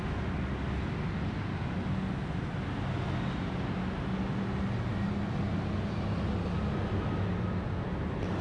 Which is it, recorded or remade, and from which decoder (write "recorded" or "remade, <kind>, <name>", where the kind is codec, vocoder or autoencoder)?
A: recorded